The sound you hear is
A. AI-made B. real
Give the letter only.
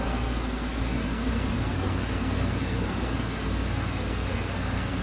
A